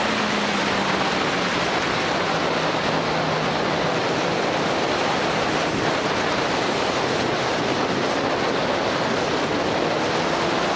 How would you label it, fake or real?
real